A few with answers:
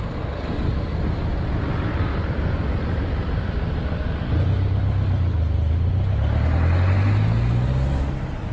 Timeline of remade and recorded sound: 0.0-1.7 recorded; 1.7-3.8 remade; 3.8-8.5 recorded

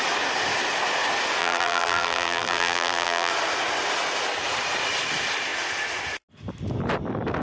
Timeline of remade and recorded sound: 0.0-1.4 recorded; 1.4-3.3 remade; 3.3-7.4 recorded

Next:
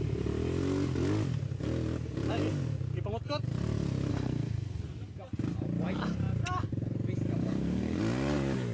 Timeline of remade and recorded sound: 0.0-4.1 recorded; 4.1-4.8 remade; 4.8-7.4 recorded; 7.4-8.0 remade; 8.0-8.7 recorded

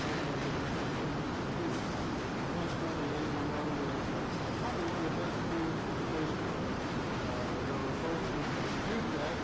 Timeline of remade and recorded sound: 0.0-9.4 recorded